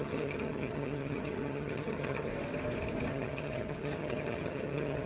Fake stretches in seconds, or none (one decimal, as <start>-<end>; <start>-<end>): 0.0-2.3; 3.1-5.1